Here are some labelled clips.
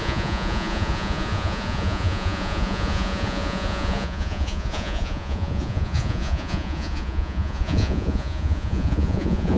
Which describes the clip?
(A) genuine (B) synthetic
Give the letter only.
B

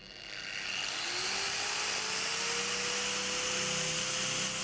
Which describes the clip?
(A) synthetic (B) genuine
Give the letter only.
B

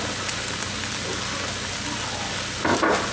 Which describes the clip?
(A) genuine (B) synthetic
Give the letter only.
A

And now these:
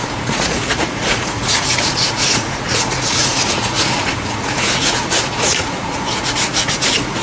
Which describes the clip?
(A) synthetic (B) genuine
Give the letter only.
A